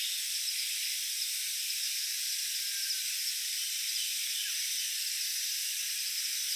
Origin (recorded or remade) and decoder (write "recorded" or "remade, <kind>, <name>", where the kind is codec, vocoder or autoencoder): recorded